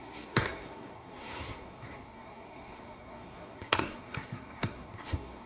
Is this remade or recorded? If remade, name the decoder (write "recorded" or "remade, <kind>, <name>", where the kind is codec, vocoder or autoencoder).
remade, codec, SNAC